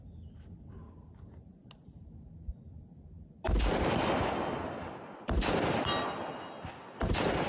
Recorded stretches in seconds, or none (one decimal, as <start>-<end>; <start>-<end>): 0.0-7.5